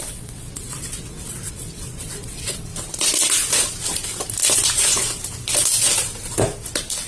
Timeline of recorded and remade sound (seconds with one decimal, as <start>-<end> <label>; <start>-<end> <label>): 0.0-2.7 remade; 2.7-7.1 recorded